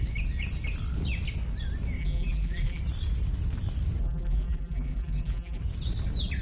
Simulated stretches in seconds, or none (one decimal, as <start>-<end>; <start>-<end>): 2.0-2.8; 4.0-5.6